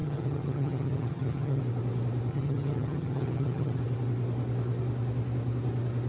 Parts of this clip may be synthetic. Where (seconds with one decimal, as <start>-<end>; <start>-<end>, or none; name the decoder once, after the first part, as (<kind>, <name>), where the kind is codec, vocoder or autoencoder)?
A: 0.0-1.6 (vocoder, HiFi-GAN); 2.3-3.8